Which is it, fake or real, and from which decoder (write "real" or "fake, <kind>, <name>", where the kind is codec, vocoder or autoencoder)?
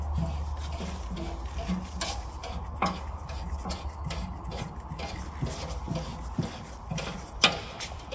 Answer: real